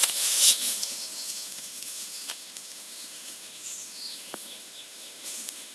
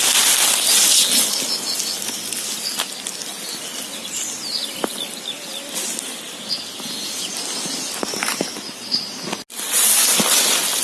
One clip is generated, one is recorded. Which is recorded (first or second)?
second